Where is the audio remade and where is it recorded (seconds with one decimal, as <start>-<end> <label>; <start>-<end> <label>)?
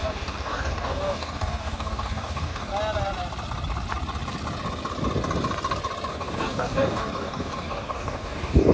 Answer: 0.0-2.7 remade; 2.7-6.1 recorded; 6.1-8.7 remade